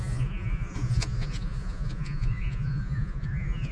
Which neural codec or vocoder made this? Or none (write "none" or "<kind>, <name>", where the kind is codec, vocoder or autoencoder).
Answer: vocoder, Vocos